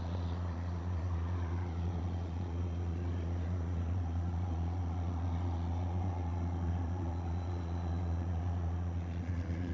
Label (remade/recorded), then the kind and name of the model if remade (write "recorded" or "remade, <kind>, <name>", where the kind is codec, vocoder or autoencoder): remade, vocoder, Vocos